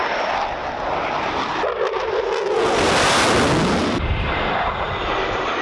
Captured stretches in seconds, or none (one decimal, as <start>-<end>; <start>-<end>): 0.0-5.6